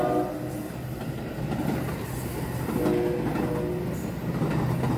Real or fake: real